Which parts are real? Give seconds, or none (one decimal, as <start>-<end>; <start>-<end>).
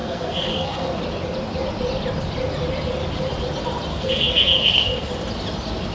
1.0-3.9; 5.1-5.9